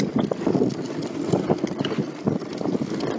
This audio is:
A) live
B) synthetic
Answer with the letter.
A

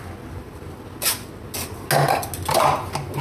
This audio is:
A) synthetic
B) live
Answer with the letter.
B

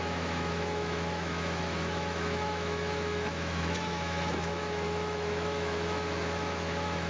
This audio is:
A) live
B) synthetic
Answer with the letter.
B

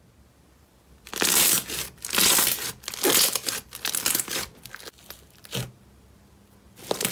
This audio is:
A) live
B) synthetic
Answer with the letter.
A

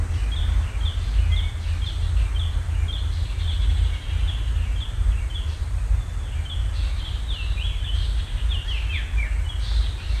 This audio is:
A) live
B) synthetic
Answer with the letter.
A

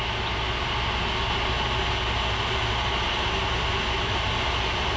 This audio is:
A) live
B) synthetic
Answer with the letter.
A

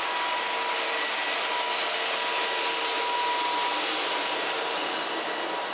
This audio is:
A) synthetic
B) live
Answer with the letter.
B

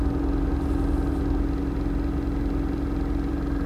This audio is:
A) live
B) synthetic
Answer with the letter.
A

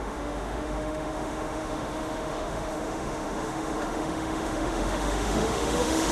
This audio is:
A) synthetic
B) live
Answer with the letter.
A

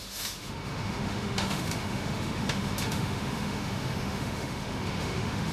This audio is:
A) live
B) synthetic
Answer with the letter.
B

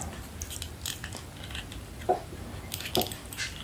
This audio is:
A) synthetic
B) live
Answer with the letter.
B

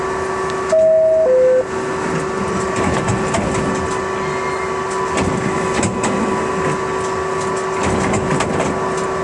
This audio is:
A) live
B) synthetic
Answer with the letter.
A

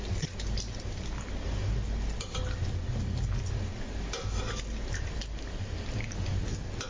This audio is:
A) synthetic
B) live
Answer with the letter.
B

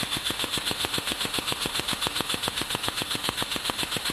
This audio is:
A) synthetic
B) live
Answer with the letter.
A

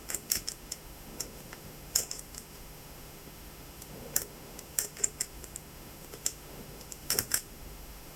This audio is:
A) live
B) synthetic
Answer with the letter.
B